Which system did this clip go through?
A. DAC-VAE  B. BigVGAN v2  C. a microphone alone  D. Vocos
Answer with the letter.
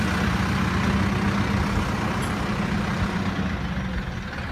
C